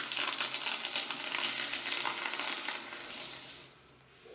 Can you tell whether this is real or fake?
real